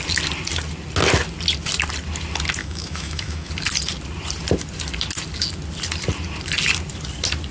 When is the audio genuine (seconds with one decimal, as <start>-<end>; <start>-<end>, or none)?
0.0-2.6; 3.5-7.5